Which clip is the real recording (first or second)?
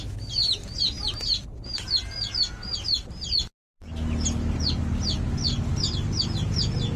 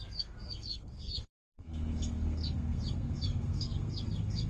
first